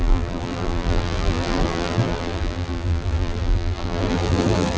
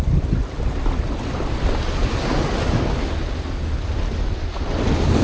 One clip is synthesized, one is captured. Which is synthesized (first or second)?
first